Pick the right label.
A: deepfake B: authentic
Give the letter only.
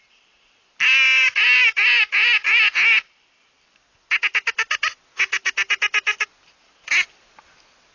B